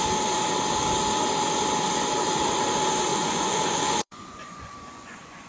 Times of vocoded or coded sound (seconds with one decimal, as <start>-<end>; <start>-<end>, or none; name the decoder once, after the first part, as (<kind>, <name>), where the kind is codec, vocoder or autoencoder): 3.1-5.5 (vocoder, Vocos)